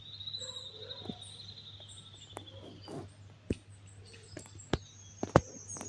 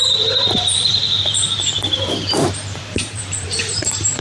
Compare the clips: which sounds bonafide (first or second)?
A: first